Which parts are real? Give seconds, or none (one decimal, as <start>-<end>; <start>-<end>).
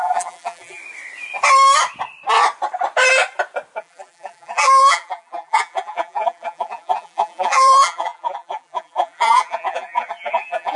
0.8-3.8